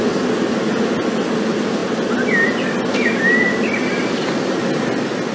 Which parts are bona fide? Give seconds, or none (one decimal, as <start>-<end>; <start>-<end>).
0.0-5.3